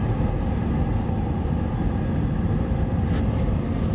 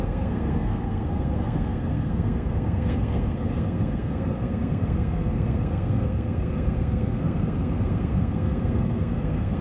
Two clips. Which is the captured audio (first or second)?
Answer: first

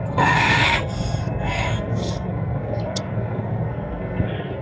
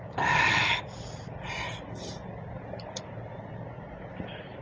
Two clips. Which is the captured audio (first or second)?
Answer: second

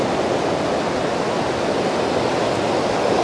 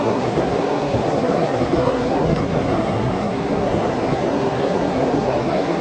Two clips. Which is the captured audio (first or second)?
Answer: first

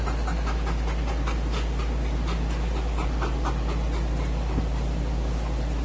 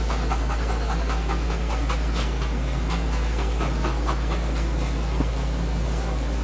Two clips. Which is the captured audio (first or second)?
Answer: first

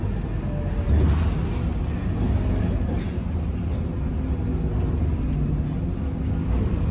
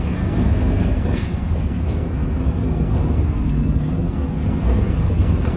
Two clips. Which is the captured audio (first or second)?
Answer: first